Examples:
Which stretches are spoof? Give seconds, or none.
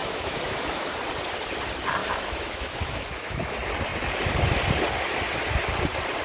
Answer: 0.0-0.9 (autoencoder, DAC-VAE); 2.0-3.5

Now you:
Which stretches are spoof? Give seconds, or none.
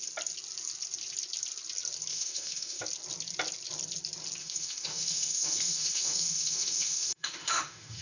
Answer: 2.1-2.8 (autoencoder, DAC-VAE); 4.4-8.0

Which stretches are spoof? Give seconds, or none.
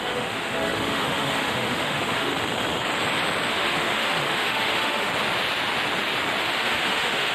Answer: 0.0-2.3 (autoencoder, DAC-VAE); 3.5-5.1; 6.4-7.3